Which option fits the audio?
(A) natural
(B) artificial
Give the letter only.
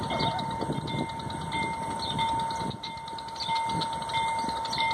A